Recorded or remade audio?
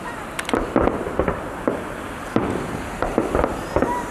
recorded